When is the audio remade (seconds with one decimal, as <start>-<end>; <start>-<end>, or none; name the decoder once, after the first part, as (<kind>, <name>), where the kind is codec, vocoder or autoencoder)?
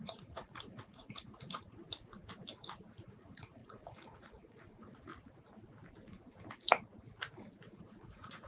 0.0-1.8 (vocoder, Vocos); 3.1-5.1; 7.9-8.5